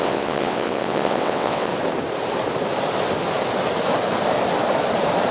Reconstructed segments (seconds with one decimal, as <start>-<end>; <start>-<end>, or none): 0.0-1.7

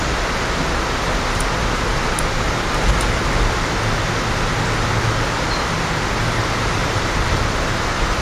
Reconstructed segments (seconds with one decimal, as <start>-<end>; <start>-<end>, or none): 6.8-8.2

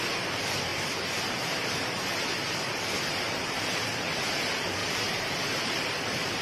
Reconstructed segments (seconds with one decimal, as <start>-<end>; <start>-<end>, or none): 0.0-6.4

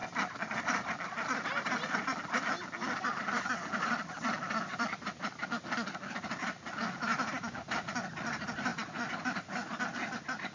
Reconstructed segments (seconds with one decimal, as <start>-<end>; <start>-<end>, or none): 1.6-10.5

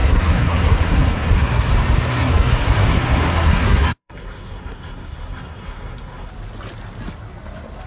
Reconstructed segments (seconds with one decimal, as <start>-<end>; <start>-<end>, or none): 0.0-1.7; 2.1-6.3

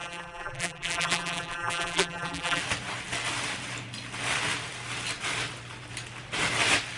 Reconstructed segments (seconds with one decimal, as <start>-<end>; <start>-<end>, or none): 0.0-2.6